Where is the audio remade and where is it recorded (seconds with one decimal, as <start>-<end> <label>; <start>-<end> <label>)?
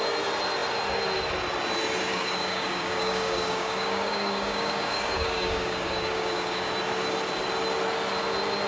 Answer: 0.0-2.1 recorded; 2.1-6.7 remade; 6.7-8.7 recorded